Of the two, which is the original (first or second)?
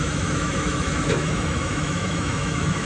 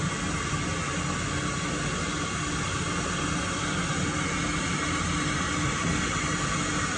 second